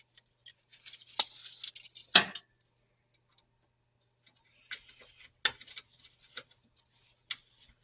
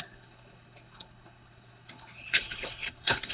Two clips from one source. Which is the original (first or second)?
first